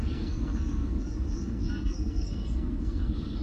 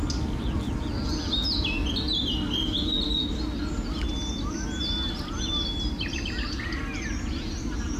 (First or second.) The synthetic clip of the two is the first